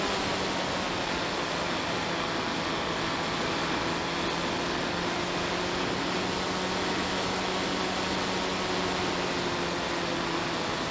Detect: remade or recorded recorded